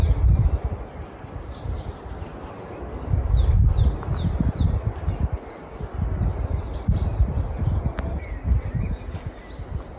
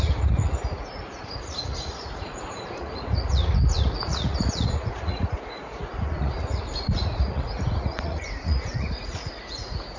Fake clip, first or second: second